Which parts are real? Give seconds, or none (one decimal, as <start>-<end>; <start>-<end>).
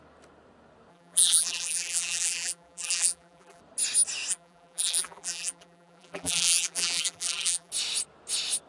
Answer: 0.0-0.9; 3.6-4.3; 7.7-8.7